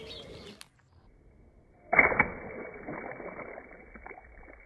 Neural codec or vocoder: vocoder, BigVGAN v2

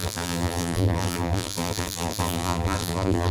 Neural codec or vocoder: vocoder, BigVGAN v2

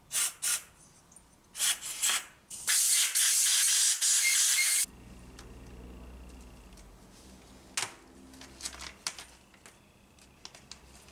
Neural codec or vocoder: none